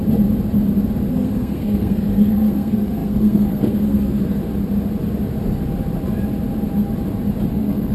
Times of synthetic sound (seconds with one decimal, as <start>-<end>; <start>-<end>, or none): 1.1-4.4; 7.5-7.9